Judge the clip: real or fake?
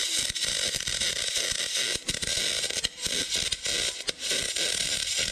real